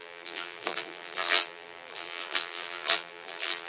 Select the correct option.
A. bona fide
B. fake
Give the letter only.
B